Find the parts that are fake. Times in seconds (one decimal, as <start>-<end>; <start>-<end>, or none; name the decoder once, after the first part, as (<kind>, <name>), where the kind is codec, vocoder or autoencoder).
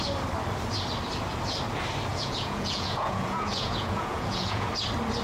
2.1-4.7 (vocoder, Vocos)